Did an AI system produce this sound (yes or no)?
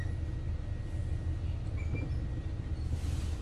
no